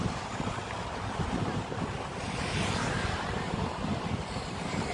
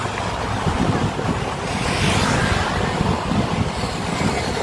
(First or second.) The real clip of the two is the second